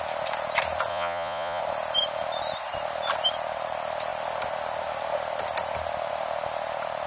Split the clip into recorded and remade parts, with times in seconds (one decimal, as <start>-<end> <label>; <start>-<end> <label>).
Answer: 0.0-0.9 recorded; 0.9-1.6 remade; 1.6-7.1 recorded